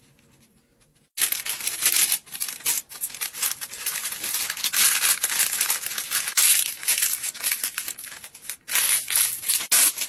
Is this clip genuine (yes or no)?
yes